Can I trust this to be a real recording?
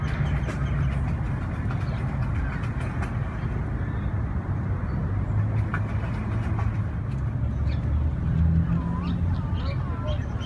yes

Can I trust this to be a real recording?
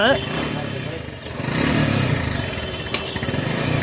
yes